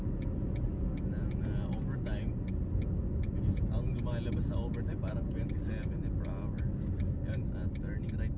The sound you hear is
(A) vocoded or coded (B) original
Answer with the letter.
B